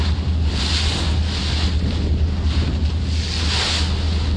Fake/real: real